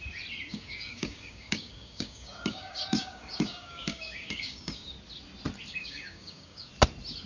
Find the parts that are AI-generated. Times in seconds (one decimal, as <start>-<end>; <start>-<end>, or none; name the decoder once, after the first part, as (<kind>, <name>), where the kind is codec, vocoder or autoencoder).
0.5-4.9 (codec, DAC); 5.7-6.7